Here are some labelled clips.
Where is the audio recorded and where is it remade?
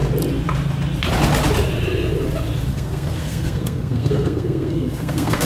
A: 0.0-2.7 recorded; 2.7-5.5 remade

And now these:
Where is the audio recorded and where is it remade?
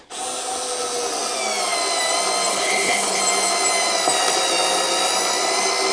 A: 0.0-2.5 recorded; 2.5-3.2 remade; 3.2-5.9 recorded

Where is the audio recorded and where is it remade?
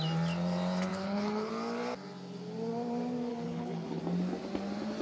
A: 0.0-0.9 recorded; 0.9-1.5 remade; 1.5-3.3 recorded; 3.3-4.0 remade; 4.0-5.0 recorded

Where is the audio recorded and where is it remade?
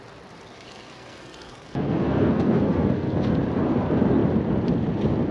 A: 0.0-0.5 recorded; 0.5-3.3 remade; 3.3-5.3 recorded